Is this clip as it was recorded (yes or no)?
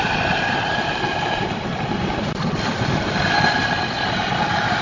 no